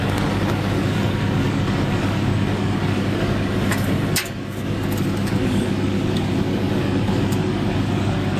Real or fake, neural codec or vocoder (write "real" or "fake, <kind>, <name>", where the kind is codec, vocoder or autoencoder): fake, codec, DAC